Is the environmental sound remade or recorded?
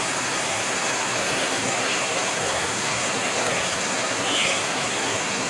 remade